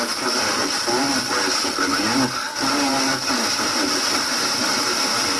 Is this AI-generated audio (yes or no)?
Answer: yes